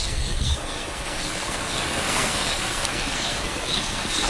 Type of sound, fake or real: fake